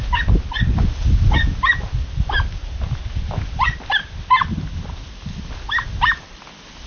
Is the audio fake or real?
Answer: real